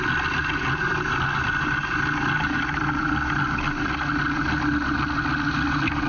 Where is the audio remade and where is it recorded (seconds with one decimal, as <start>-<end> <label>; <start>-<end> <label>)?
0.0-6.1 recorded